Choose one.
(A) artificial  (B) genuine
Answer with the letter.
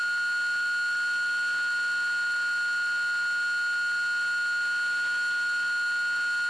B